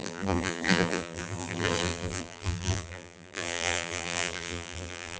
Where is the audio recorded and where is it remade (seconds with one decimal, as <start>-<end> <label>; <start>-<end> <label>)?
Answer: 0.0-5.2 remade